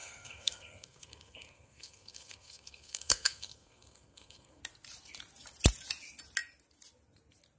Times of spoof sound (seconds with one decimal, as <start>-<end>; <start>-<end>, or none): 0.0-4.6